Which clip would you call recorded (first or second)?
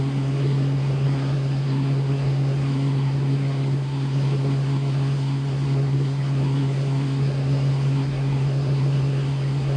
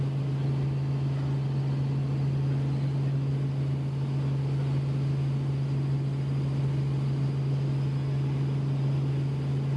second